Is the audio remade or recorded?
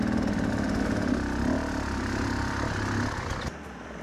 recorded